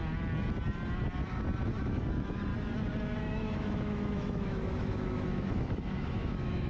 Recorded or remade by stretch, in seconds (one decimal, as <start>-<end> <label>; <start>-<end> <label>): 0.0-1.7 recorded; 1.7-2.5 remade; 2.5-3.2 recorded; 3.2-6.7 remade